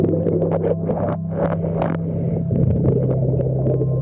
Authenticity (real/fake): real